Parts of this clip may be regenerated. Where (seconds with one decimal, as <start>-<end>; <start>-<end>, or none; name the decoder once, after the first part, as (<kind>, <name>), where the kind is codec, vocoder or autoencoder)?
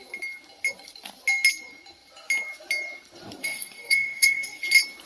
3.4-4.6 (codec, DAC)